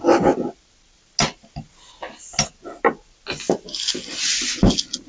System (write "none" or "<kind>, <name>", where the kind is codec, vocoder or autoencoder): none